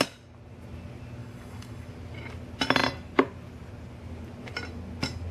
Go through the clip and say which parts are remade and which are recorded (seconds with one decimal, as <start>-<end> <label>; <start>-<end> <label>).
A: 0.0-1.2 recorded; 1.2-1.9 remade; 1.9-5.3 recorded